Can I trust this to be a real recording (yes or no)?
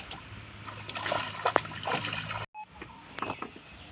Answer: yes